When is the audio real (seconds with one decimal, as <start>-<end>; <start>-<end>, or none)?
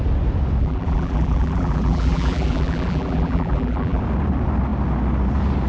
0.0-0.6; 4.0-5.7